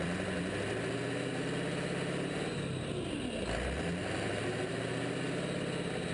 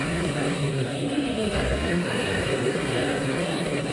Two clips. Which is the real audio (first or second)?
first